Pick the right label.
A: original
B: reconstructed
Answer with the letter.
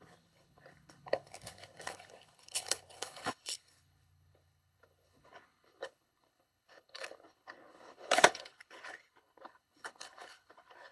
B